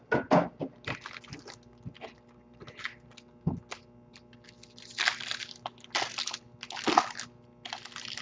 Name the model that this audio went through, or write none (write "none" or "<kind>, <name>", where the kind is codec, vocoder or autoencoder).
none